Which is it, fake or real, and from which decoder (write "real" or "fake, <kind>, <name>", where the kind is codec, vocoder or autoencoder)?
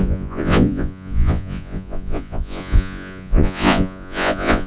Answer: fake, vocoder, Vocos